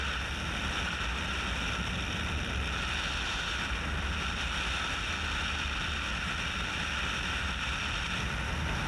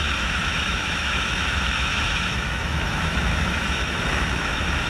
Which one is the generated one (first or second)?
second